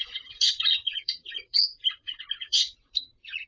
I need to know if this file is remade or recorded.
remade